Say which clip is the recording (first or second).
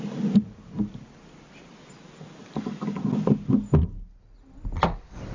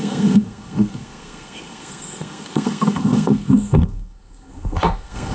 first